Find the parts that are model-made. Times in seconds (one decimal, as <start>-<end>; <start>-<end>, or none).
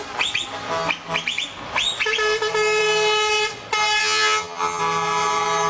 4.0-4.8